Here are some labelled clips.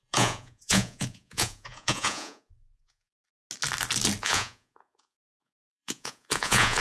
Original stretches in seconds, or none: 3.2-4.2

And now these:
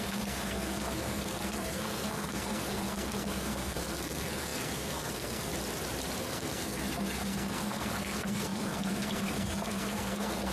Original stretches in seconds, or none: 5.5-6.2

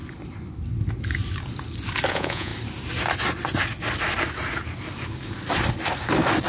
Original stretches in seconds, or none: 0.0-2.1; 2.5-6.5

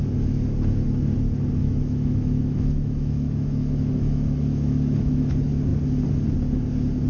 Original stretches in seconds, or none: 0.0-1.6; 5.3-7.1